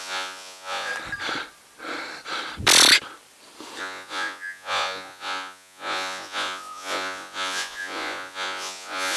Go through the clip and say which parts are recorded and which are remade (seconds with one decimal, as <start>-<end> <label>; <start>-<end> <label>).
0.0-0.9 remade; 0.9-3.8 recorded; 3.8-9.2 remade